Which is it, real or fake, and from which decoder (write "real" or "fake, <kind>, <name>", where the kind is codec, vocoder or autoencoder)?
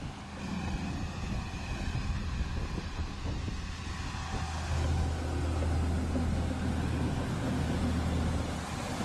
real